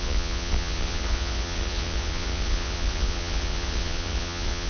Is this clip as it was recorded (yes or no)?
no